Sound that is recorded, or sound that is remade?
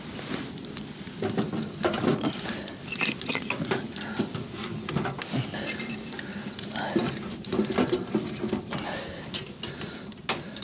recorded